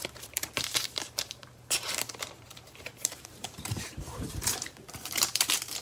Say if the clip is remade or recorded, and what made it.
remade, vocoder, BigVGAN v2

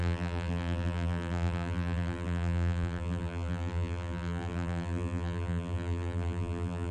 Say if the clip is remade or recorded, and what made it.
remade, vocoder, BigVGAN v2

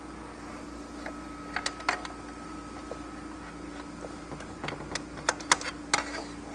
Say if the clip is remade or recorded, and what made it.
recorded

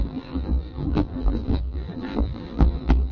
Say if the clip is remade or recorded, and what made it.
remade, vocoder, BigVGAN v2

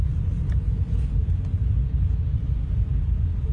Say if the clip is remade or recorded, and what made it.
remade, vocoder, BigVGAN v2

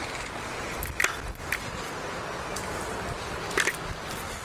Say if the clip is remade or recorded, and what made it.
recorded